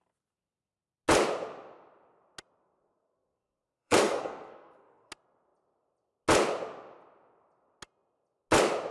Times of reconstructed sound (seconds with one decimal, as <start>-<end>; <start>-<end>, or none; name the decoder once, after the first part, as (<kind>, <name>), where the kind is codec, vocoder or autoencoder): 2.6-5.1 (codec, SNAC)